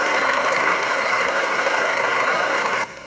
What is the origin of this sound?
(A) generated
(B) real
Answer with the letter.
A